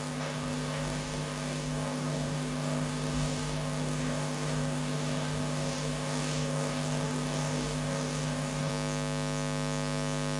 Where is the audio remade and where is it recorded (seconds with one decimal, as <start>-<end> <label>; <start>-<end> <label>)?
0.0-8.7 remade; 8.7-10.4 recorded